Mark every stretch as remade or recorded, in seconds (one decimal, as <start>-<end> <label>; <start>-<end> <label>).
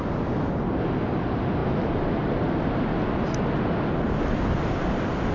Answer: 0.0-5.3 recorded